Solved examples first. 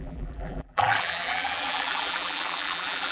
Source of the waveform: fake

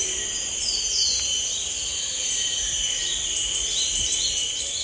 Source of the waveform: real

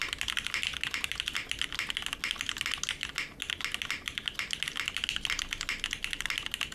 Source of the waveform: real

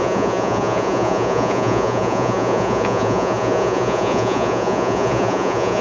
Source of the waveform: fake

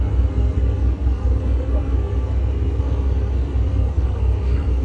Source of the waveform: fake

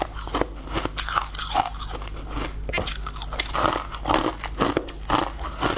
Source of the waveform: real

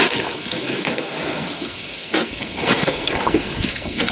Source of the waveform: fake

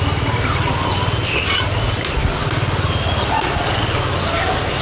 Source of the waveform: real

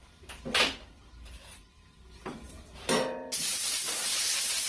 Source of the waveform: fake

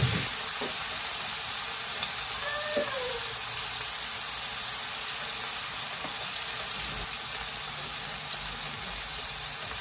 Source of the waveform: real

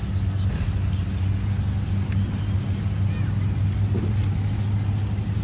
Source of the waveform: real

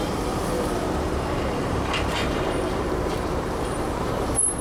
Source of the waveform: fake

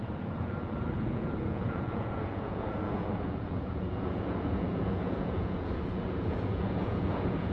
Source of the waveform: fake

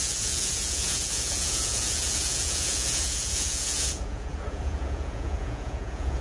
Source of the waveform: fake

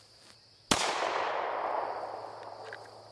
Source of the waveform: real